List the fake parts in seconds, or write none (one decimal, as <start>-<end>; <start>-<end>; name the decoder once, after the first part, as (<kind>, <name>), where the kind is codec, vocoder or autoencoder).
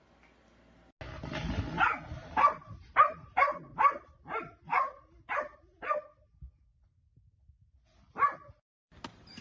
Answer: 2.2-4.8 (vocoder, BigVGAN v2)